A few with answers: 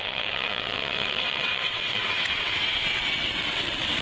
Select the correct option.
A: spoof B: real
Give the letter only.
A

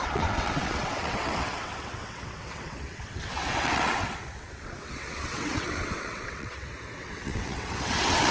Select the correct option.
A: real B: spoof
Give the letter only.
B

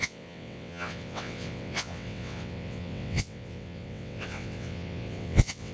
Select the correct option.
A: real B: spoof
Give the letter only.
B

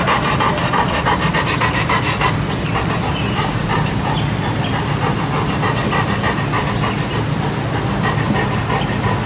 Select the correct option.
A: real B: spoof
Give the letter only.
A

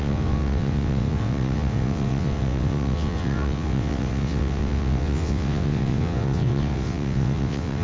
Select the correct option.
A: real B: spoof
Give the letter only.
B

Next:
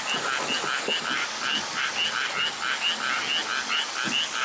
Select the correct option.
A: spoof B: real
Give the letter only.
B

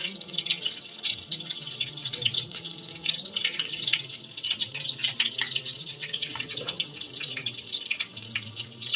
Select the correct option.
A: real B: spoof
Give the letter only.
B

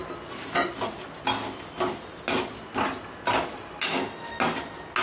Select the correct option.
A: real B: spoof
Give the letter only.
A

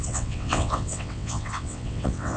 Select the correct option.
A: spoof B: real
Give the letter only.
A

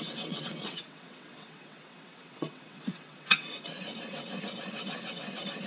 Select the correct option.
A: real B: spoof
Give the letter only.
B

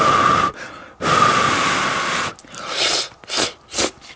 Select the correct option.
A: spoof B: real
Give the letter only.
B